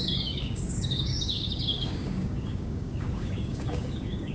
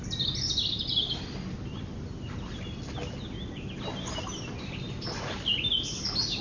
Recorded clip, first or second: second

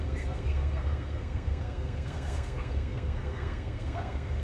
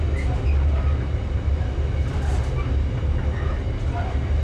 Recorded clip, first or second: second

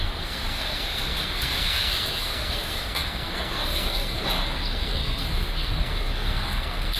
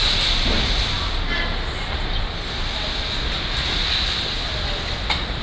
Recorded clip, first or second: second